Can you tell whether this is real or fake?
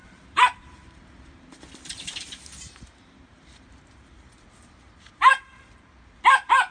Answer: fake